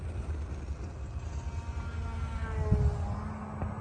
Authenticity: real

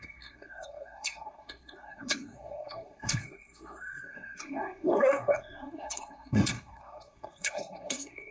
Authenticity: fake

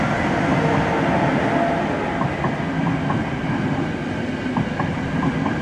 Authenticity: real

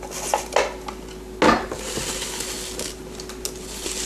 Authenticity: real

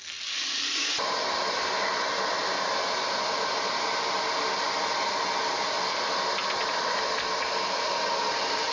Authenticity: real